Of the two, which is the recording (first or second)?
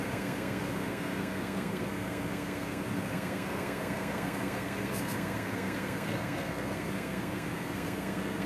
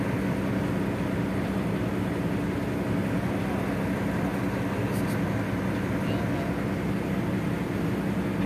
second